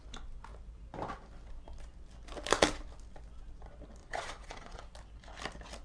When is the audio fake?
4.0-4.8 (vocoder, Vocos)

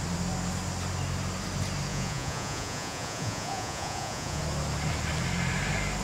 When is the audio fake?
1.9-4.4 (vocoder, Vocos)